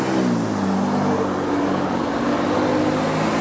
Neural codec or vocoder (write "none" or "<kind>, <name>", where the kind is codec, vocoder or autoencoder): none